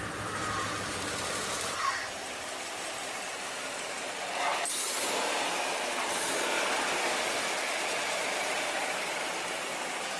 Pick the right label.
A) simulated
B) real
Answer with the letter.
A